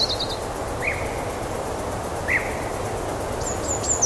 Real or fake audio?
real